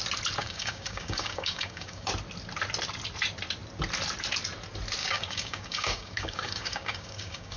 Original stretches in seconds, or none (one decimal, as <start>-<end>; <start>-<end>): 0.0-0.4; 2.1-5.0